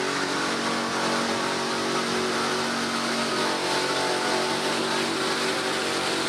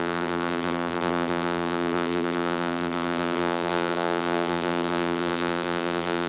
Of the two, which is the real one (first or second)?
first